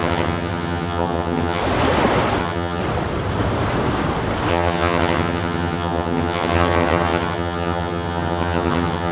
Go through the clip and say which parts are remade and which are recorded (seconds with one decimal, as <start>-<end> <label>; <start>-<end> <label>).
0.0-1.6 remade; 1.6-2.4 recorded; 2.4-2.8 remade; 2.8-4.5 recorded; 4.5-9.1 remade